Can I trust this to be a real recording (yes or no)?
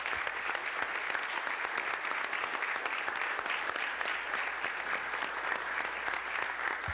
yes